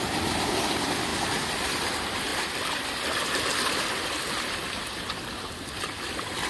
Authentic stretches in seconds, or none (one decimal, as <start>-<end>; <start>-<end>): 2.3-6.1

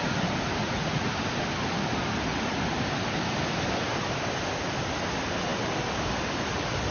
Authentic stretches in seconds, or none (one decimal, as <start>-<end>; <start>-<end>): 0.0-0.6; 1.1-6.9

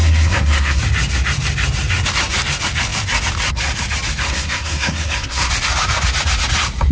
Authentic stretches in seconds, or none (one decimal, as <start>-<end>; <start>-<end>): 0.8-4.2; 5.5-6.9

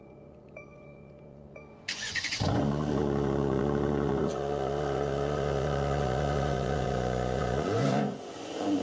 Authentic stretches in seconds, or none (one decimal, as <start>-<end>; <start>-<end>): none

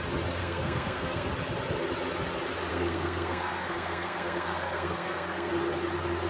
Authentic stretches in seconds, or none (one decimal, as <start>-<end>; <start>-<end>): 0.0-0.4; 1.3-2.7; 5.5-6.3

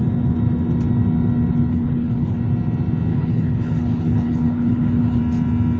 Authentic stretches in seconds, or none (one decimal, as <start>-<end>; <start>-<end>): 0.0-1.7; 2.4-3.1; 5.2-5.8

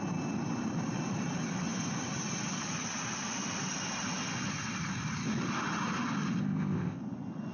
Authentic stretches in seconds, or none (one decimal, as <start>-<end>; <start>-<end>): 0.0-6.4; 7.0-7.5

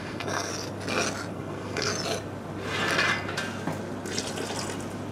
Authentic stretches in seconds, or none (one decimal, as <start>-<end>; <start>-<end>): 0.5-1.3; 1.9-5.1